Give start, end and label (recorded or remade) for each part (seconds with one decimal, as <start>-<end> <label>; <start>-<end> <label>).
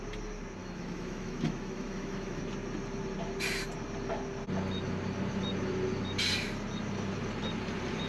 0.0-0.6 recorded; 0.6-2.4 remade; 2.4-8.1 recorded